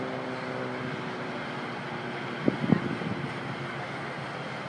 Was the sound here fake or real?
real